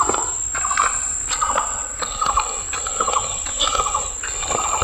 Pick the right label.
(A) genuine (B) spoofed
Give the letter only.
A